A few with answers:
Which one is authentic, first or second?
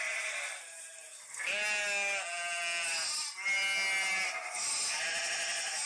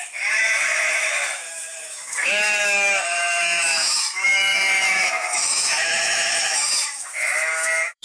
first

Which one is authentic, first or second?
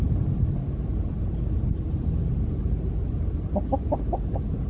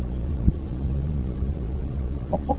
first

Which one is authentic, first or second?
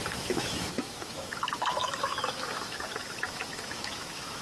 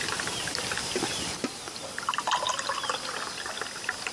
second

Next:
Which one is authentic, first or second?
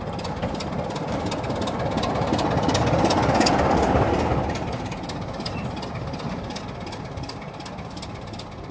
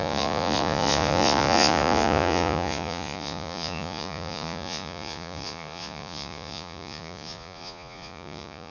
first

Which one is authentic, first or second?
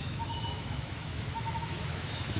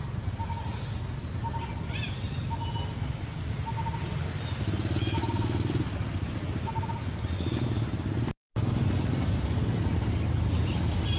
second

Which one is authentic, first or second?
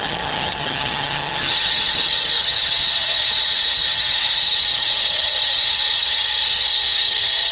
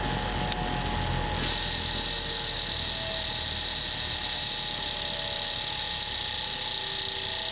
second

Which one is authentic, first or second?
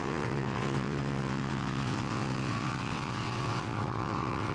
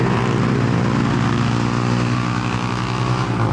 second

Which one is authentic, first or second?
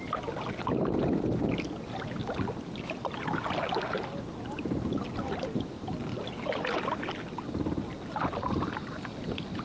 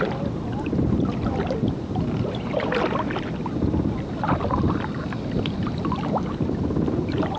first